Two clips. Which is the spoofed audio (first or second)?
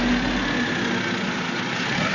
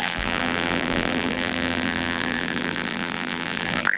second